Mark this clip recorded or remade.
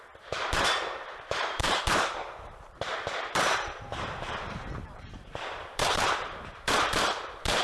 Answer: remade